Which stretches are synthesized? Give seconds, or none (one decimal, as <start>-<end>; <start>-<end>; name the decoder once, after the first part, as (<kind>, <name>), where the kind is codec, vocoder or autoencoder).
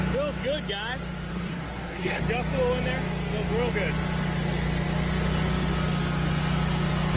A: 1.3-2.2 (codec, SNAC)